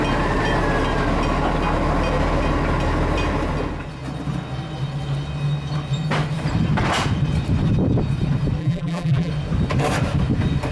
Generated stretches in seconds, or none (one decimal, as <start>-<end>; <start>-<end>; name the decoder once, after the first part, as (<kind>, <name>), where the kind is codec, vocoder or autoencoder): 8.6-9.3 (vocoder, BigVGAN v2)